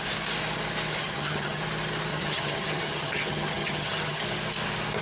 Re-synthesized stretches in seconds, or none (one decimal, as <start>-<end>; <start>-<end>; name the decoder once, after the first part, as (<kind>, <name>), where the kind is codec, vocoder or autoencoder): 0.9-1.6 (vocoder, HiFi-GAN); 2.1-4.2